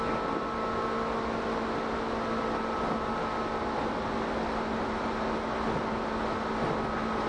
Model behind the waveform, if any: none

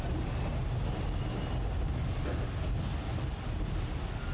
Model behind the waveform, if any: none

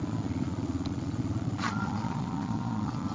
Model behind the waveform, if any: vocoder, Vocos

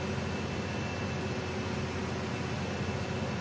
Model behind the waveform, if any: none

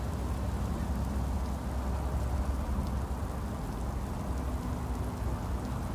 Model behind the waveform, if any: none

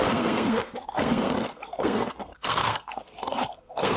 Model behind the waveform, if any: codec, SNAC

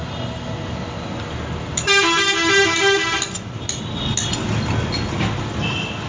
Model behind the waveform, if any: none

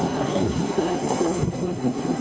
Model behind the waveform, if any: codec, SNAC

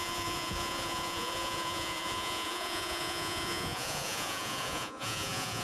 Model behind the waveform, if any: vocoder, Vocos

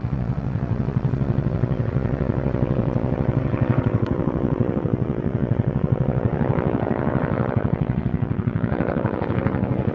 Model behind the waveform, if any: vocoder, WaveNeXt